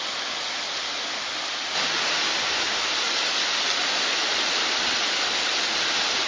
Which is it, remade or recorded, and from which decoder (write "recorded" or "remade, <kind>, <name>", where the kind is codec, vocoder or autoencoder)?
recorded